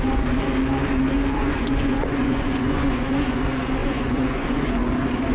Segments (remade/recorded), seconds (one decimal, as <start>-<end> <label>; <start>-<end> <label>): 0.0-1.4 recorded; 1.4-3.4 remade; 3.4-3.8 recorded; 3.8-4.7 remade; 4.7-5.3 recorded